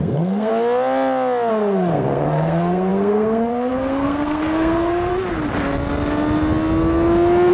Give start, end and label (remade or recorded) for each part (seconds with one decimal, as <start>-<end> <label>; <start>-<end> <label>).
0.0-0.5 remade; 0.5-1.5 recorded; 1.5-5.1 remade; 5.1-7.5 recorded